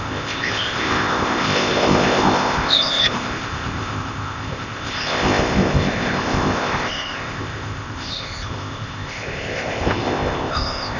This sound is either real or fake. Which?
fake